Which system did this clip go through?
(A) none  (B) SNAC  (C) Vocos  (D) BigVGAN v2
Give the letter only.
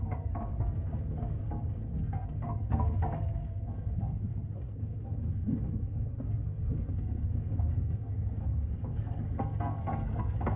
B